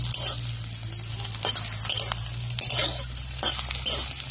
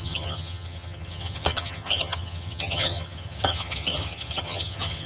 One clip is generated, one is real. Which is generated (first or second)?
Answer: second